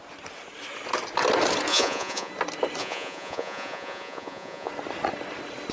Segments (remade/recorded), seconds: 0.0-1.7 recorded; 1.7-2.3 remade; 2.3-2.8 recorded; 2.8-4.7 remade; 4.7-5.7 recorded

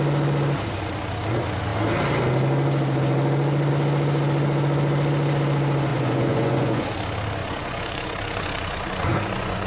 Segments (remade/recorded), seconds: 0.0-5.9 recorded; 5.9-6.9 remade; 6.9-7.4 recorded; 7.4-9.7 remade

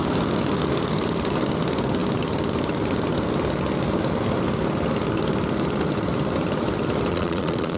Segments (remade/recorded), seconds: 0.0-7.1 recorded; 7.1-7.8 remade

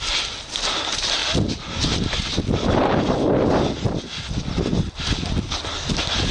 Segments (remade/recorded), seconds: 0.0-6.3 recorded

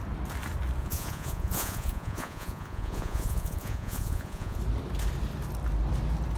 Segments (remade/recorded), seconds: 0.0-0.8 recorded; 0.8-4.6 remade; 4.6-6.4 recorded

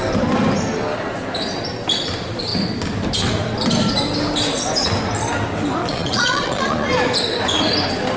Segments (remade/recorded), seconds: 0.0-5.8 recorded; 5.8-6.9 remade; 6.9-8.2 recorded

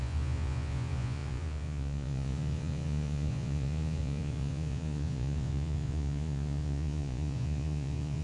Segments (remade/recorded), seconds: 0.0-8.2 remade

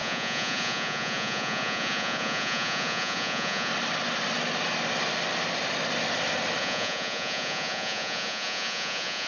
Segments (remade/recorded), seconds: 0.0-3.7 remade; 3.7-6.6 recorded; 6.6-9.3 remade